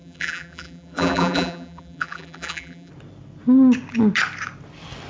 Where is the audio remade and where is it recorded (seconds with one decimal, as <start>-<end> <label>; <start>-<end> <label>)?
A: 0.0-2.9 remade; 2.9-5.1 recorded